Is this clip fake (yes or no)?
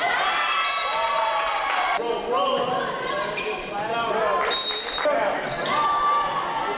no